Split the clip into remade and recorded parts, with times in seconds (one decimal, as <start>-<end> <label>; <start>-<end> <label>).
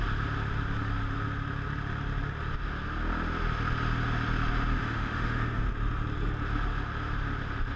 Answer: 0.0-4.8 recorded; 4.8-5.7 remade; 5.7-7.8 recorded